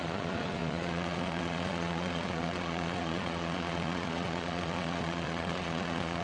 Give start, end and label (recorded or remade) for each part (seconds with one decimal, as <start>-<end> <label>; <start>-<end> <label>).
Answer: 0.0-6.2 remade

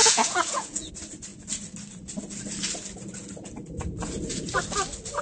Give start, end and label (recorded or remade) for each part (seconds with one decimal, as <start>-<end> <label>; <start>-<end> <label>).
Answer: 0.0-0.9 remade; 0.9-5.2 recorded

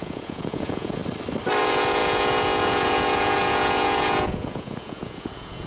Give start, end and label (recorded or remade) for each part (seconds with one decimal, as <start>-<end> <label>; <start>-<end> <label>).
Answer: 0.0-1.0 remade; 1.0-1.6 recorded; 1.6-5.7 remade

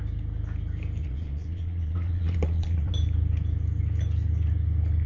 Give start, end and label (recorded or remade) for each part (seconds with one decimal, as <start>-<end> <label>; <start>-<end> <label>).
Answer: 0.0-1.0 recorded; 1.0-2.9 remade; 2.9-5.1 recorded

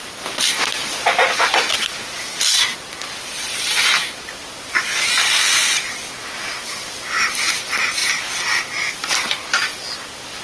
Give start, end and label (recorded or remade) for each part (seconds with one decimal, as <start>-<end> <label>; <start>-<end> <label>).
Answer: 0.0-10.4 recorded

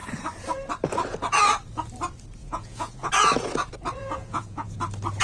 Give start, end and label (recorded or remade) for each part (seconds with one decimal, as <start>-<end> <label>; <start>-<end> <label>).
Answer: 0.0-2.4 recorded; 2.4-3.1 remade; 3.1-4.0 recorded; 4.0-4.8 remade; 4.8-5.2 recorded

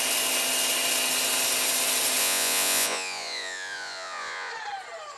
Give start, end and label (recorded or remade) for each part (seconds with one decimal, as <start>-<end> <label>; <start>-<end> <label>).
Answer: 0.0-2.2 recorded; 2.2-4.5 remade; 4.5-5.2 recorded